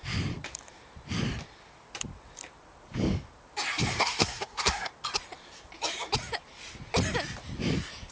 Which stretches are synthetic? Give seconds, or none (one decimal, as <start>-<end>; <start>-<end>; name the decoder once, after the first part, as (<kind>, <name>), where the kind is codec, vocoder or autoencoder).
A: 3.9-4.9 (codec, SNAC)